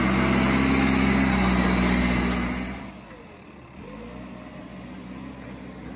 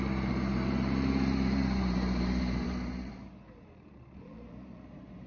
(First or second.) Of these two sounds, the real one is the first